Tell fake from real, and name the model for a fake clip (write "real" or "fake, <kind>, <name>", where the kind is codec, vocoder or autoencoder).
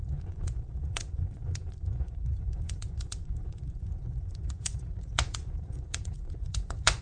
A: fake, vocoder, Vocos